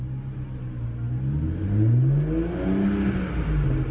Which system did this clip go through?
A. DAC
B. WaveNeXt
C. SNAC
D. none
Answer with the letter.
D